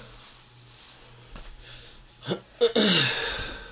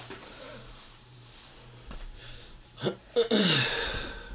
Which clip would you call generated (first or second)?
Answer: second